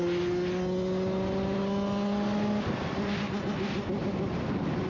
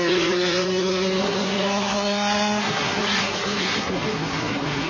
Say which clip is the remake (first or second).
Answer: second